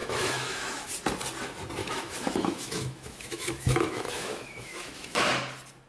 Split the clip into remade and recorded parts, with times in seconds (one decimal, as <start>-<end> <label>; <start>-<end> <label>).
0.0-0.9 remade; 0.9-1.8 recorded; 1.8-5.3 remade; 5.3-5.9 recorded